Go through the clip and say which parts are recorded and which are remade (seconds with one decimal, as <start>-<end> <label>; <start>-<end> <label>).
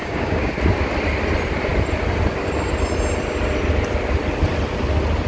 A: 0.0-0.5 remade; 0.5-5.3 recorded